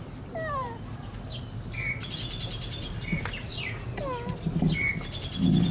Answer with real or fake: real